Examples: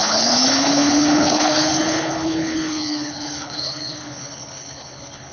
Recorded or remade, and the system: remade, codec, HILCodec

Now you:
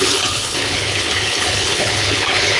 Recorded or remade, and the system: remade, codec, HILCodec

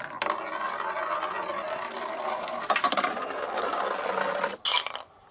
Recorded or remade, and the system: recorded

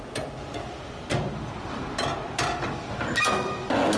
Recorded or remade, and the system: recorded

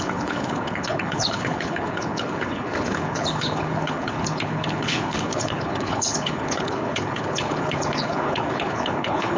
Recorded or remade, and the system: remade, codec, HILCodec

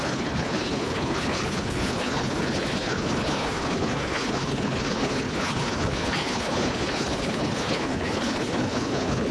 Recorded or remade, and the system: remade, codec, HILCodec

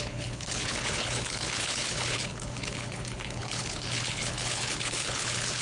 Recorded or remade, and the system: remade, codec, HILCodec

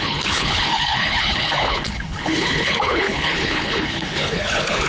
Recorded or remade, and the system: remade, codec, HILCodec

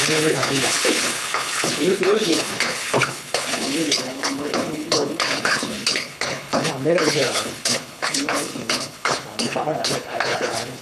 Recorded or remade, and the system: remade, codec, HILCodec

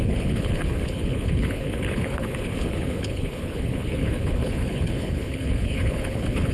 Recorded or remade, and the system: remade, codec, HILCodec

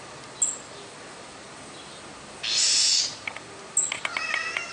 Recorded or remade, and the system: recorded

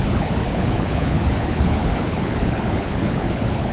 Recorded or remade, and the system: remade, codec, HILCodec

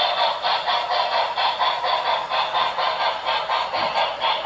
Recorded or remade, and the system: recorded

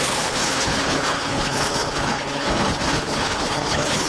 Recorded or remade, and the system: remade, codec, HILCodec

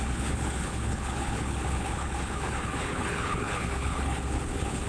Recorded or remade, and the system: remade, codec, HILCodec